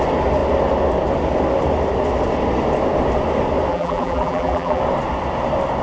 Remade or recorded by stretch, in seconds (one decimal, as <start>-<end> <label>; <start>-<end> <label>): 0.0-3.7 recorded; 3.7-4.8 remade; 4.8-5.8 recorded